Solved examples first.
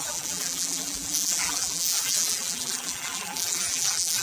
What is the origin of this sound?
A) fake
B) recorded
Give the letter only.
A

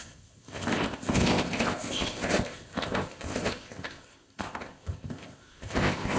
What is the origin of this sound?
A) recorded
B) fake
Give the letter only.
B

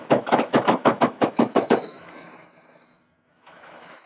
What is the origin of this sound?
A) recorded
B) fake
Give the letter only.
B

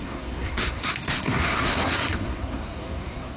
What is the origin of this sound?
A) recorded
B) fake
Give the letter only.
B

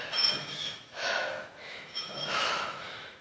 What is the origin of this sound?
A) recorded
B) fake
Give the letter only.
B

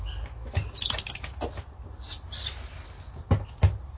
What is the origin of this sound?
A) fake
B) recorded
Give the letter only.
B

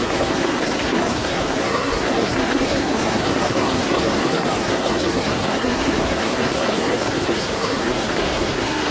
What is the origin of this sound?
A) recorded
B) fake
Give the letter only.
B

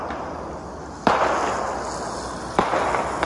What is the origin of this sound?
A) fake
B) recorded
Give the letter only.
B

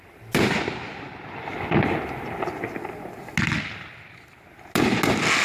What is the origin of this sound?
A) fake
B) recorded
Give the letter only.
B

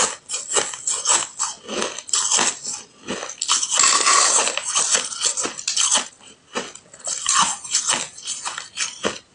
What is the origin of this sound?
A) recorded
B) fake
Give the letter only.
A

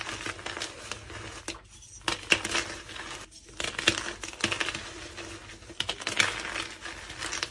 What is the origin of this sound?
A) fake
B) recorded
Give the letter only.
B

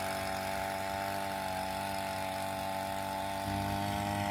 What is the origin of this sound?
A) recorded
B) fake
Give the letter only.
A